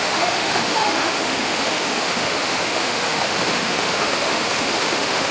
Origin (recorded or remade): remade